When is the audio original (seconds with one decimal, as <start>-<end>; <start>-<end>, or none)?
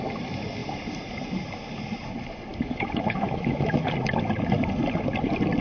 0.0-2.5; 3.9-5.6